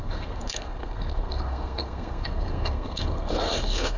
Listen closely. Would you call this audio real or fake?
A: fake